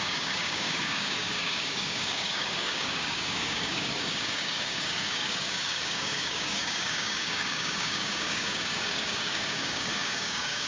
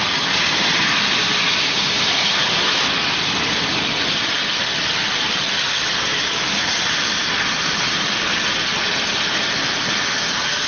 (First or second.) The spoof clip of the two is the first